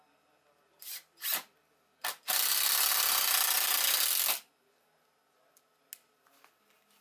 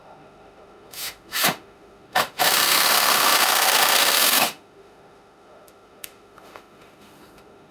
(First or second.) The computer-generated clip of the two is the second